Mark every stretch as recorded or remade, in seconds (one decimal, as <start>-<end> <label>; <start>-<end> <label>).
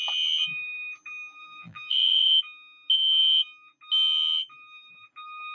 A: 0.0-1.4 recorded; 1.4-2.3 remade; 2.3-5.5 recorded